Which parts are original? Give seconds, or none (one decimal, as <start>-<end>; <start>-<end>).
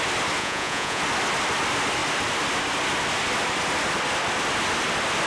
0.0-0.4; 1.0-5.3